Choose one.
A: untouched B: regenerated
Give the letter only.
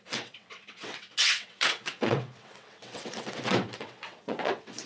B